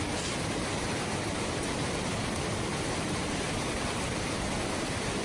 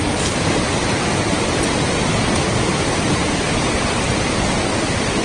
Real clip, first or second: second